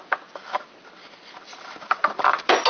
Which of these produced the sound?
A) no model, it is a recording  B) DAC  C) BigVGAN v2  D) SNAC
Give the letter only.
A